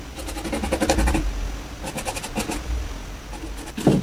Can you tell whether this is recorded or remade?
recorded